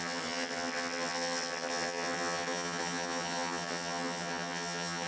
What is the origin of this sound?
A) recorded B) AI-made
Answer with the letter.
B